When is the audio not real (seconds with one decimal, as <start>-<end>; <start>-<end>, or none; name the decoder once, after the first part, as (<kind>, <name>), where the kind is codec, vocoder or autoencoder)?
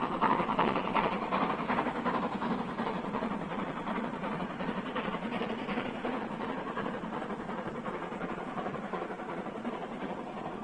0.0-1.3 (vocoder, Vocos); 2.8-10.6